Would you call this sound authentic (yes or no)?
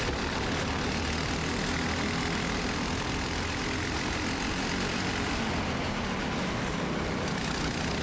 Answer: yes